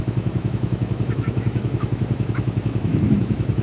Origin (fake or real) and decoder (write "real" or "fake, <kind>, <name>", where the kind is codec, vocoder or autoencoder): fake, autoencoder, DAC-VAE